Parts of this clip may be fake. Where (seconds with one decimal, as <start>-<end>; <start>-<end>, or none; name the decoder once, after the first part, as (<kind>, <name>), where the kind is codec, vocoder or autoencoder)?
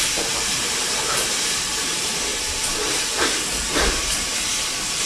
0.0-5.1 (vocoder, BigVGAN v2)